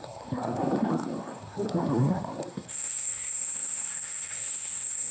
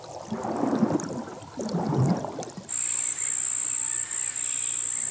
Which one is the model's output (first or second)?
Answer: first